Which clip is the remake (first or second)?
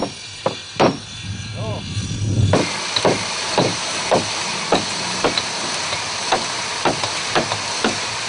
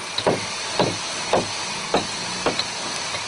first